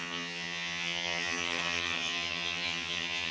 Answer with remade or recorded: remade